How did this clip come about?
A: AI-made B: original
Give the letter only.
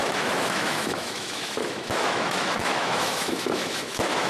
A